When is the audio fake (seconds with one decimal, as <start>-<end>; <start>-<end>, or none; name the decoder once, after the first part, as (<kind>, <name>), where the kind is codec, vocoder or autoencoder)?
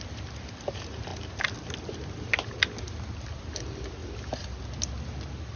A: none